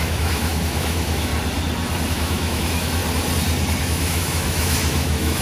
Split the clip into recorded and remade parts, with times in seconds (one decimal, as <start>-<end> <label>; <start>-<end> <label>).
0.0-1.3 remade; 1.3-2.1 recorded; 2.1-3.0 remade; 3.0-3.8 recorded; 3.8-5.4 remade